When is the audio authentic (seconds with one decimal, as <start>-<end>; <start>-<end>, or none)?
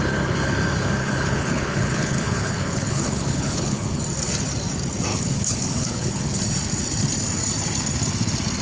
0.0-1.0; 4.0-5.1; 6.4-8.6